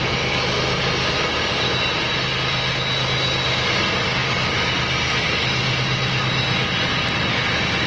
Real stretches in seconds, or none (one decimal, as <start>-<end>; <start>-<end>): 0.0-7.9